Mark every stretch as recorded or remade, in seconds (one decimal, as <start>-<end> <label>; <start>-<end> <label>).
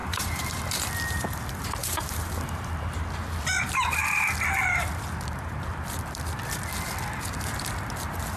0.0-0.6 remade; 0.6-1.8 recorded; 1.8-2.3 remade; 2.3-8.4 recorded